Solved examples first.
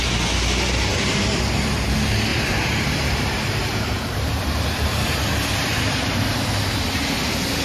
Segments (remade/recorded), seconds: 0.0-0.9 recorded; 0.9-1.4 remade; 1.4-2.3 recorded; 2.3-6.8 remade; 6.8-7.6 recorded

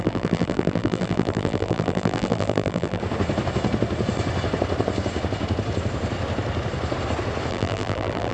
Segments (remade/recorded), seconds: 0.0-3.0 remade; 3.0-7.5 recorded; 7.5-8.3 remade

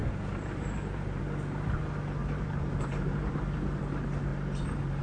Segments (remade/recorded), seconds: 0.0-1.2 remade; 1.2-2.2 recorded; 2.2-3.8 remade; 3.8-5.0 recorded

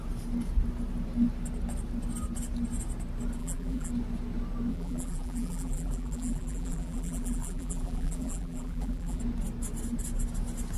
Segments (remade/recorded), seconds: 0.0-3.4 recorded; 3.4-3.9 remade; 3.9-4.7 recorded; 4.7-9.2 remade; 9.2-10.8 recorded

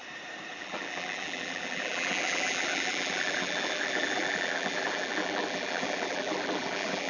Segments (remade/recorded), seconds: 0.0-0.5 recorded; 0.5-7.1 remade